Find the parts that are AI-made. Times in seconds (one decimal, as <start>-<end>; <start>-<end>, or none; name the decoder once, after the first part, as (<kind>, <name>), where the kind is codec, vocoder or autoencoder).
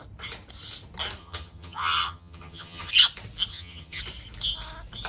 1.2-2.9 (vocoder, HiFi-GAN); 3.5-4.0